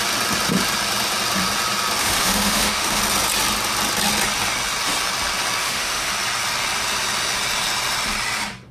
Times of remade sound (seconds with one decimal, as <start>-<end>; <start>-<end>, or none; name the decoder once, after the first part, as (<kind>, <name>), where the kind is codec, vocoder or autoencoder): 2.0-3.0 (autoencoder, DAC-VAE); 5.6-6.1